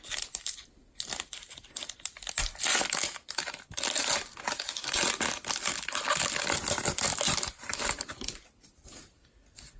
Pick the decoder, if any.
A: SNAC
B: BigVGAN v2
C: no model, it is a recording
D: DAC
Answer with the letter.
C